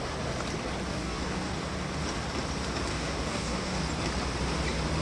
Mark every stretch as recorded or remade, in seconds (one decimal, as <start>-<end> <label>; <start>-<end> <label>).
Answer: 0.0-0.9 recorded; 0.9-1.5 remade; 1.5-2.9 recorded; 2.9-3.8 remade; 3.8-5.0 recorded